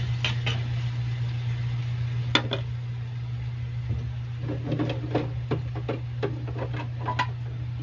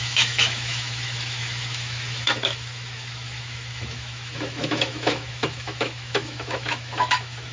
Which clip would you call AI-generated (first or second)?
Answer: second